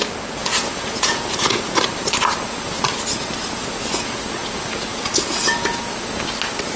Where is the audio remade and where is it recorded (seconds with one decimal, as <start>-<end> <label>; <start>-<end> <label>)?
0.0-0.4 recorded; 0.4-1.6 remade; 1.6-4.4 recorded; 4.4-5.8 remade; 5.8-6.8 recorded